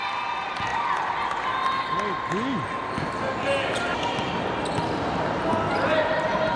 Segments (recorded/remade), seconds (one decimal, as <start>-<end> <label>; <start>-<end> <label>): 0.0-0.7 recorded; 0.7-1.8 remade; 1.8-6.6 recorded